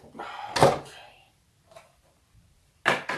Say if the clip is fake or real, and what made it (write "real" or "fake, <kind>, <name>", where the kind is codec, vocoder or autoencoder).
real